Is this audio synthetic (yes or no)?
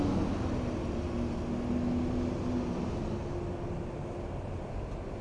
no